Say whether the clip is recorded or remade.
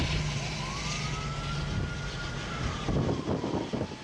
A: recorded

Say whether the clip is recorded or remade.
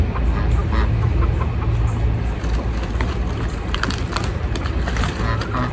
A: recorded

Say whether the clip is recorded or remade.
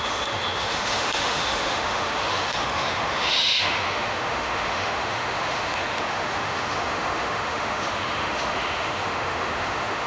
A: remade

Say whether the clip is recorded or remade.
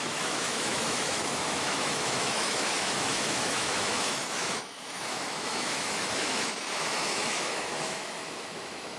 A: remade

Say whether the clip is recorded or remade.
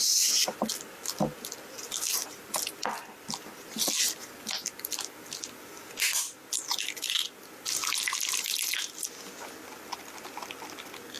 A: recorded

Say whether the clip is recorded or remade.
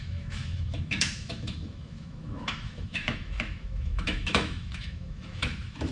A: remade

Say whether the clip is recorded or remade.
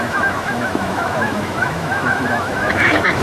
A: remade